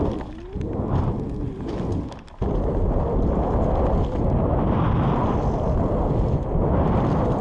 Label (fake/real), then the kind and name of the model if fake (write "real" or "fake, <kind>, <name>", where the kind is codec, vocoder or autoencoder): real